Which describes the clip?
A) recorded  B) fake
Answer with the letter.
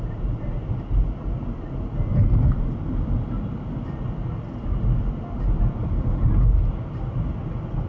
A